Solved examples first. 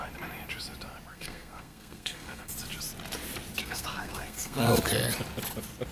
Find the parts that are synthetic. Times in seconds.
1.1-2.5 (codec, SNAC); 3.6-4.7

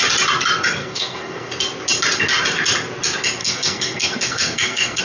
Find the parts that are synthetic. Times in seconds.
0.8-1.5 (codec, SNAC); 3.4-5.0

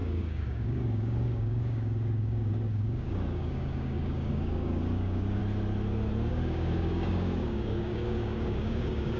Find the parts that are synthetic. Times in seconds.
0.0-5.4 (codec, DAC); 6.3-9.2

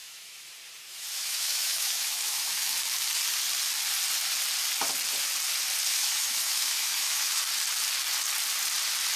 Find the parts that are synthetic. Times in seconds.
0.0-0.5 (autoencoder, DAC-VAE); 0.9-2.8; 5.9-7.4

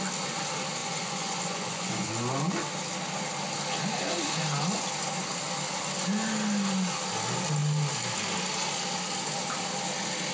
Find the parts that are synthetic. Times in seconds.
0.8-2.1 (vocoder, Vocos)

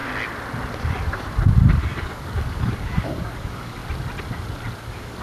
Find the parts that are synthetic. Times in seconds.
1.8-3.8 (codec, DAC); 4.8-5.2